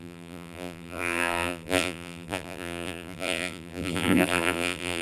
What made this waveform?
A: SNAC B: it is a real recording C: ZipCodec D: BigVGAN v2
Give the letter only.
D